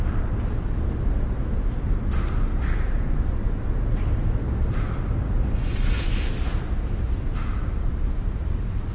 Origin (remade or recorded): recorded